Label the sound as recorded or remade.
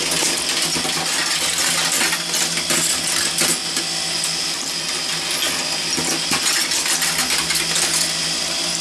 recorded